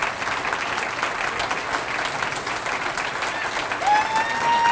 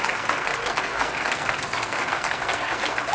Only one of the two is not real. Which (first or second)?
second